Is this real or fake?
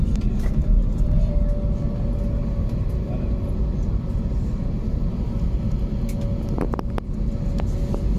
real